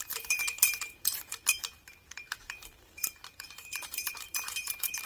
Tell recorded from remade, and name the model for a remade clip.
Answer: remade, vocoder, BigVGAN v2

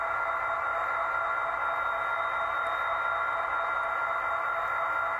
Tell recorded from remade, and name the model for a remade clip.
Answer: recorded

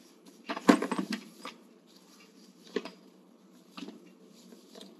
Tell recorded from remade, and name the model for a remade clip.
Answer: remade, vocoder, BigVGAN v2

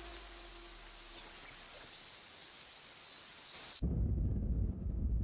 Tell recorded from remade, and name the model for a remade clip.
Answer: recorded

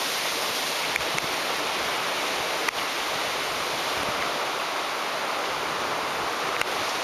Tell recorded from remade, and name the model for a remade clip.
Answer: recorded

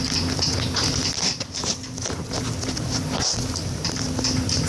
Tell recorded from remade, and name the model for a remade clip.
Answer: remade, vocoder, BigVGAN v2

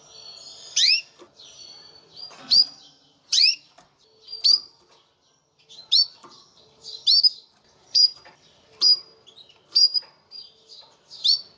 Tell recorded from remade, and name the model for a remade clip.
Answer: remade, vocoder, BigVGAN v2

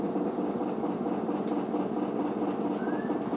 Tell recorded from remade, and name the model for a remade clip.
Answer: remade, vocoder, BigVGAN v2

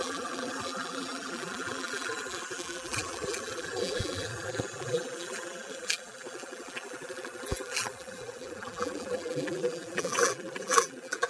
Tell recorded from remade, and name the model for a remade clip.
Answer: remade, vocoder, BigVGAN v2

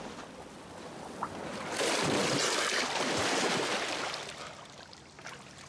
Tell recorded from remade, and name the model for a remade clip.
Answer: recorded